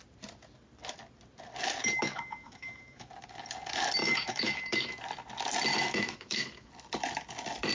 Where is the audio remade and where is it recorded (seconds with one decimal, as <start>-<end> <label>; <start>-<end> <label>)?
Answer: 0.0-1.8 recorded; 1.8-3.1 remade; 3.1-4.0 recorded; 4.0-5.0 remade; 5.0-5.7 recorded; 5.7-6.7 remade; 6.7-7.7 recorded